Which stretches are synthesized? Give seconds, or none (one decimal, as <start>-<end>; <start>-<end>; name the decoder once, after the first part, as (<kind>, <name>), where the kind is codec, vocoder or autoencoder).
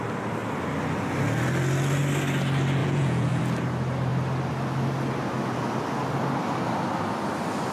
2.8-3.4 (vocoder, Vocos)